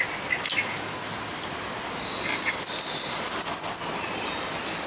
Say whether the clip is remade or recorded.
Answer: recorded